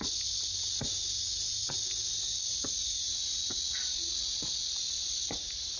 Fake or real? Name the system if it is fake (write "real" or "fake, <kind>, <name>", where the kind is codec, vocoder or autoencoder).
real